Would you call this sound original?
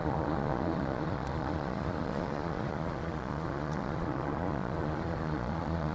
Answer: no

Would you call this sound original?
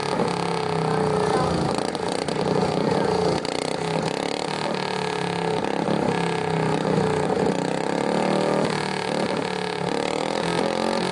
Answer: yes